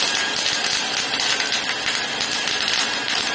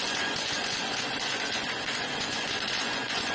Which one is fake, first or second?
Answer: second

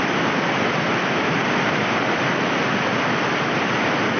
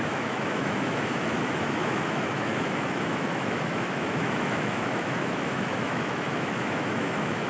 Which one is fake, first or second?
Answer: second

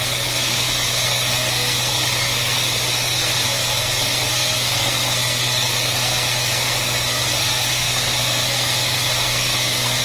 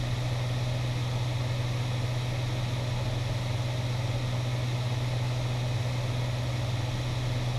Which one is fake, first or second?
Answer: first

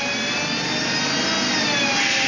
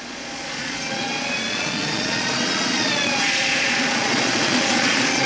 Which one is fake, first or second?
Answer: second